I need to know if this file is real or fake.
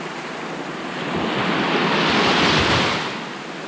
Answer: real